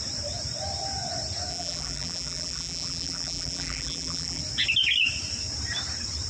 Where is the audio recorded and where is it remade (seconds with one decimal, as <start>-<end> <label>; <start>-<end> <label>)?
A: 0.0-1.5 recorded; 1.5-4.4 remade; 4.4-6.3 recorded